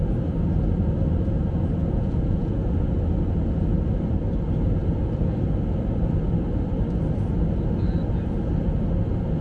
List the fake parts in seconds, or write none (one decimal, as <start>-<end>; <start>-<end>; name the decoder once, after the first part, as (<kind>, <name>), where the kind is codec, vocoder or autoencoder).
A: 1.8-2.7 (vocoder, Vocos)